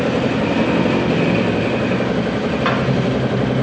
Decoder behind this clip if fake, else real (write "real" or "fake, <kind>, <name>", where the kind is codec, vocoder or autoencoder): real